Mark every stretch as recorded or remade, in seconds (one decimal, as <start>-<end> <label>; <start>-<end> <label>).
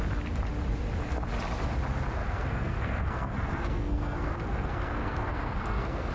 0.0-2.2 recorded; 2.2-6.1 remade